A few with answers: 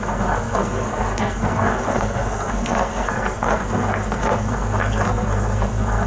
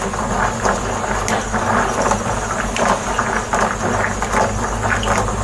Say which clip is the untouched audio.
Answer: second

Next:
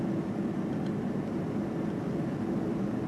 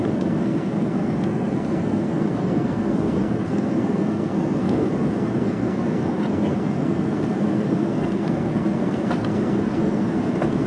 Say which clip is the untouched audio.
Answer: first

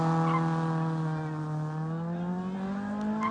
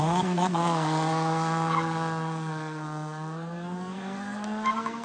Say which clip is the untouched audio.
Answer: first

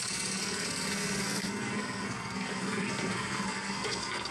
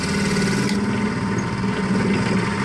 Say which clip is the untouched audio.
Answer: second